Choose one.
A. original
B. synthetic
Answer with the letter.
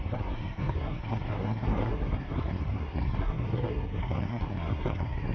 B